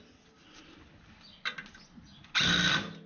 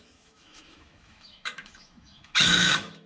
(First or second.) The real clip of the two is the first